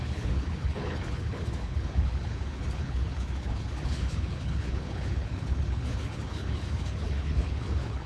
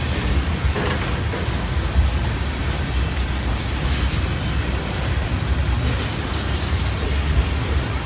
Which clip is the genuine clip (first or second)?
second